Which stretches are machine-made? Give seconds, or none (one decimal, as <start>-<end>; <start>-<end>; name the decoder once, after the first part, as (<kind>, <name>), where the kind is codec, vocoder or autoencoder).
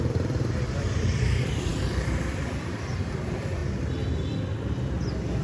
0.0-3.6 (vocoder, BigVGAN v2)